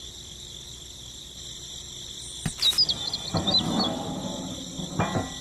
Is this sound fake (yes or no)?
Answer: no